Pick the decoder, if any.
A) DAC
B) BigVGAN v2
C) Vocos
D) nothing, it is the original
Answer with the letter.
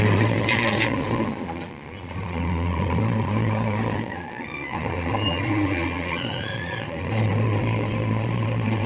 C